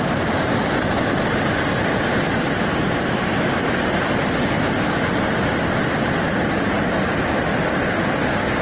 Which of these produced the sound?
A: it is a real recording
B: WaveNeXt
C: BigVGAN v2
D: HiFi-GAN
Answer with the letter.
A